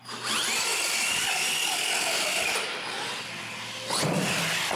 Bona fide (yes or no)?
yes